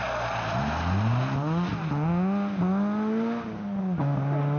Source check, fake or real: real